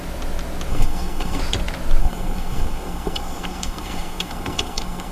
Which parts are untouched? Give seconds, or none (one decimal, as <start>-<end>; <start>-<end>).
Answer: 0.0-0.7; 1.4-2.0